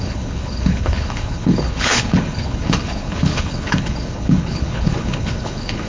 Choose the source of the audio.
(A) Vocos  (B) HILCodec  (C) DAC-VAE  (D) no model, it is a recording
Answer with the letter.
B